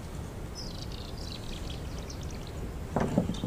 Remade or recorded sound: recorded